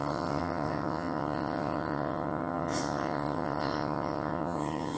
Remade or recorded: remade